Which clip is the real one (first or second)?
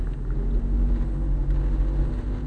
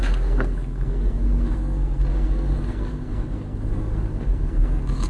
first